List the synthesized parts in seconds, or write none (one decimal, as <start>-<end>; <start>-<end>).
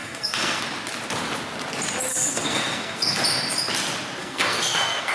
0.0-0.6; 2.1-3.2; 4.2-5.1